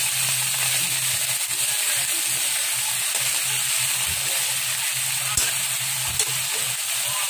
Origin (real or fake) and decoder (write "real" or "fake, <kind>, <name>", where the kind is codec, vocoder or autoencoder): real